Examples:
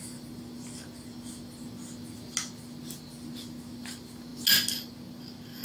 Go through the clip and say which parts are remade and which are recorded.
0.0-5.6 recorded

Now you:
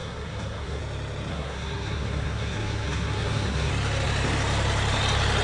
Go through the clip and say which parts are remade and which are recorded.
0.0-0.8 remade; 0.8-1.3 recorded; 1.3-3.7 remade; 3.7-5.4 recorded

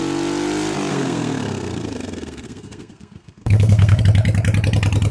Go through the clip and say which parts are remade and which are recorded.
0.0-0.9 recorded; 0.9-4.0 remade; 4.0-5.1 recorded

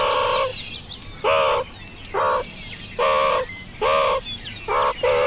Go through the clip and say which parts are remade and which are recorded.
0.0-5.3 recorded